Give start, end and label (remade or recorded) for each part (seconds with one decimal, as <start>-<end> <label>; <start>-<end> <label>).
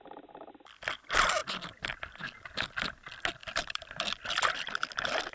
0.0-1.4 recorded; 1.4-2.2 remade; 2.2-3.4 recorded; 3.4-4.3 remade; 4.3-5.3 recorded